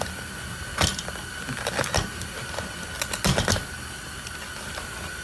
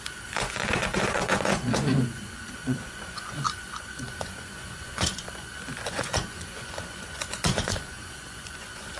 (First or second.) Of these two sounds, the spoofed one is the second